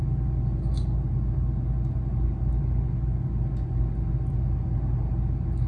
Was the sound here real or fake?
real